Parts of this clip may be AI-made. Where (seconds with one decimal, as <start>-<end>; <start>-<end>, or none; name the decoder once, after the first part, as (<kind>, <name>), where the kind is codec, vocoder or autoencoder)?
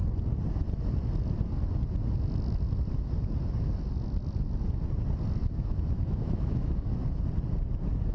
5.4-7.2 (autoencoder, DAC-VAE)